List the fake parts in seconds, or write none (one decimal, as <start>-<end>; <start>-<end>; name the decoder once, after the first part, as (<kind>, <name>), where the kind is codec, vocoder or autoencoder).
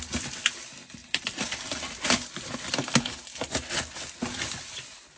none